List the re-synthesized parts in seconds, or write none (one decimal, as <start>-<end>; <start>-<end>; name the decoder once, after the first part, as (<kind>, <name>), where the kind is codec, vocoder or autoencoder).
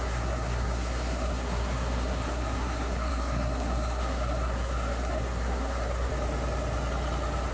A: 0.0-6.1 (codec, SNAC)